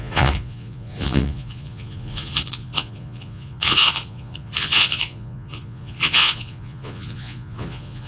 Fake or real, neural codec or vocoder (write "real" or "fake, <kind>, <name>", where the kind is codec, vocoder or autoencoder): fake, vocoder, Vocos